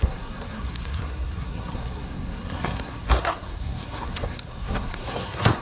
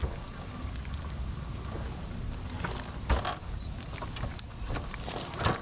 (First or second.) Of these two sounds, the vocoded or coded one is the first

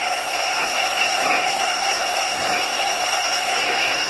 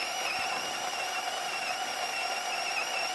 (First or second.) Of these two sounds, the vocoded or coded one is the first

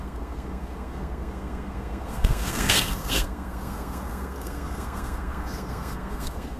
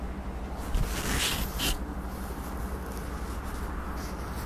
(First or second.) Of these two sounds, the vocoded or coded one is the first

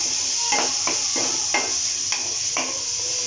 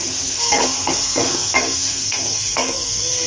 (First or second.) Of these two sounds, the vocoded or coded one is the second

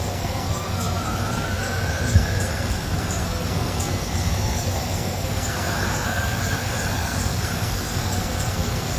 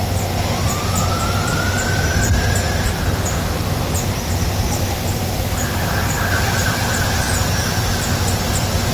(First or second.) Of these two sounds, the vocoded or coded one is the first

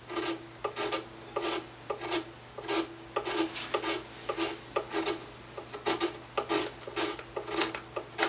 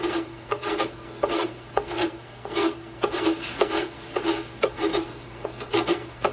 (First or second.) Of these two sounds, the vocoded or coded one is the second